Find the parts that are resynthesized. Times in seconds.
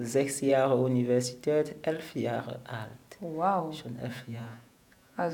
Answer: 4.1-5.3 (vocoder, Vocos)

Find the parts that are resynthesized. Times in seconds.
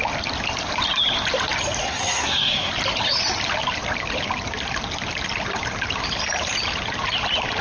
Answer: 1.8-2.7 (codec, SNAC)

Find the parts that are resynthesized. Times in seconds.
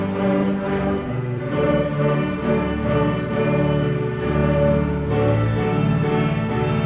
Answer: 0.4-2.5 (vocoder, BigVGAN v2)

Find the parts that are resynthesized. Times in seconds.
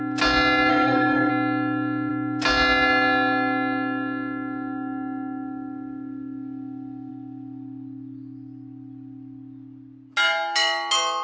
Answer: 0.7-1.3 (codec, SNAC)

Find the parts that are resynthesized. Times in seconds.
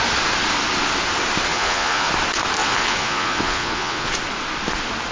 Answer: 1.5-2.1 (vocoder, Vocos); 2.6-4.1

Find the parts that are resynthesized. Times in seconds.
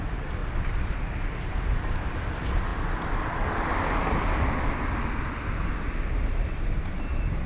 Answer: 0.0-0.4 (vocoder, BigVGAN v2); 1.5-2.7; 6.3-7.5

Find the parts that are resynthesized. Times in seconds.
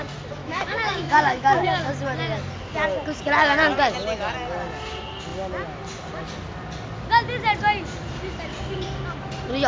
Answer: 0.4-1.9 (autoencoder, DAC-VAE)